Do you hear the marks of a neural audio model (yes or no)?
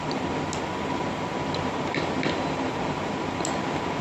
no